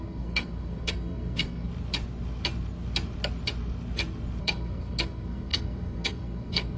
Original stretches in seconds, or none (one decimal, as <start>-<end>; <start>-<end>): 1.7-4.4

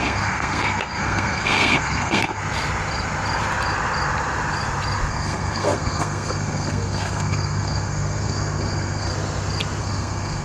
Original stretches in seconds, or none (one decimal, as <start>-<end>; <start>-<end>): 2.4-5.1; 9.1-9.8

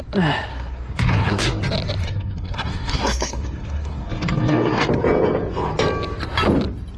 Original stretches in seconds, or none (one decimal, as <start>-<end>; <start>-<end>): 0.0-0.5; 1.6-2.0; 4.9-7.0

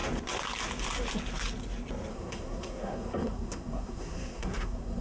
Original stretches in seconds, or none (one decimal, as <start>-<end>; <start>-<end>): 0.0-2.1

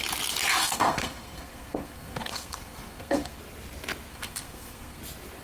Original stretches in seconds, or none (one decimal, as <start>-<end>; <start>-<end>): 0.0-0.6; 3.4-4.1; 5.0-5.4